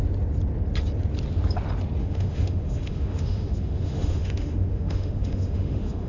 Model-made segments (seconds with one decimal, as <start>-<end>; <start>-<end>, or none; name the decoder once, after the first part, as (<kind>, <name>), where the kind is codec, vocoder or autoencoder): 2.0-6.1 (autoencoder, DAC-VAE)